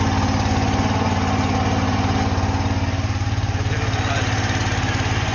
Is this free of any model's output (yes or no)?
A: yes